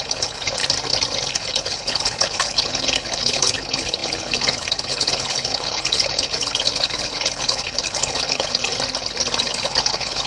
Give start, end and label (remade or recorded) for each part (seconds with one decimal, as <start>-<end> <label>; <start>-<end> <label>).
0.0-0.6 remade; 0.6-1.3 recorded; 1.3-8.7 remade; 8.7-9.4 recorded; 9.4-10.3 remade